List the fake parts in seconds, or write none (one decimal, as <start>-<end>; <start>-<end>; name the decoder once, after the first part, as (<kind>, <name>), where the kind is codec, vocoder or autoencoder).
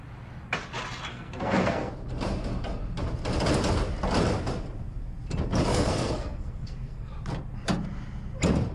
1.1-1.9 (codec, SNAC); 5.7-7.1